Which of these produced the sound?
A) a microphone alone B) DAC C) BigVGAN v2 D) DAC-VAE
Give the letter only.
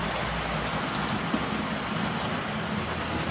A